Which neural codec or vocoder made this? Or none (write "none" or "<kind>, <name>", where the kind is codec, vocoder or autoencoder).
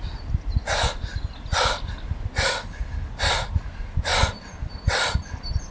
none